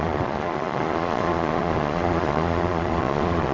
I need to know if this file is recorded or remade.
remade